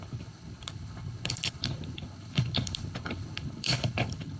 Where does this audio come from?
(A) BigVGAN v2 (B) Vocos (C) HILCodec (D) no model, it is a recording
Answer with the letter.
C